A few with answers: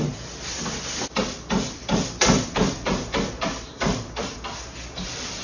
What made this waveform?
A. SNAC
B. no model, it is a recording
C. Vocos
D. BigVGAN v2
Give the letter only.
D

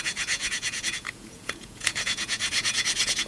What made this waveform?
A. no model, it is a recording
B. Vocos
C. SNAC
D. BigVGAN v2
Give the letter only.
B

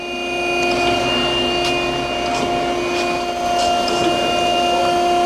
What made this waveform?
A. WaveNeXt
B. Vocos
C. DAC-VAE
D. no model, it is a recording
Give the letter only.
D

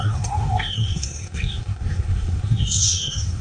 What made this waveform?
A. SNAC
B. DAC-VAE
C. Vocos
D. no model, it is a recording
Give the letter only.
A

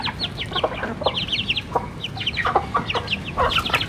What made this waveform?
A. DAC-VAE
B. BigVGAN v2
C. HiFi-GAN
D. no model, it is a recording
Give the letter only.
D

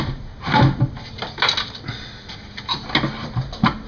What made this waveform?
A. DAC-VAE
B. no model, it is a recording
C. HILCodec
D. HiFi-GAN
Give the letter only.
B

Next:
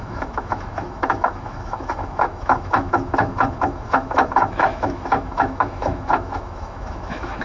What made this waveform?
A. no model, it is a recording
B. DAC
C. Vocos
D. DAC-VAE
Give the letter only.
D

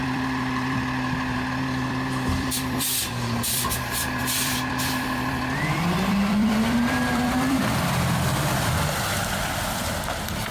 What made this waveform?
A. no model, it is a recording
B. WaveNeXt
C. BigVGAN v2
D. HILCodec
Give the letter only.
C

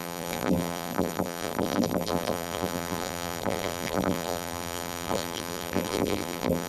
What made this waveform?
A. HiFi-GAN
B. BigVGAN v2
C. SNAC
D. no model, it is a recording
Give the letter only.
B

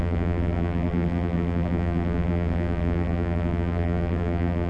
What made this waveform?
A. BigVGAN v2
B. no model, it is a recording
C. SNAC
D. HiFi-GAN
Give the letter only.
A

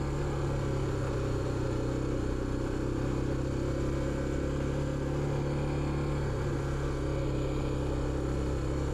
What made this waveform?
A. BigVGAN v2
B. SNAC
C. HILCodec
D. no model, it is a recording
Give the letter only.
D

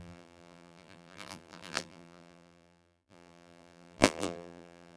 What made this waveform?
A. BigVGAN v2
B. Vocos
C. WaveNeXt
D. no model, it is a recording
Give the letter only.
A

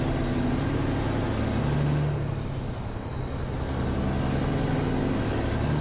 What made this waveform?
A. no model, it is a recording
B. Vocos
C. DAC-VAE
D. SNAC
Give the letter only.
A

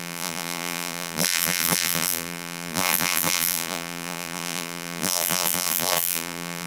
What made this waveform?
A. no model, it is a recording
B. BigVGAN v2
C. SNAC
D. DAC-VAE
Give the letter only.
B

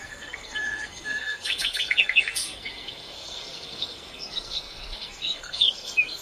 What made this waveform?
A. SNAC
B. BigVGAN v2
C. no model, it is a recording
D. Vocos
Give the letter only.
A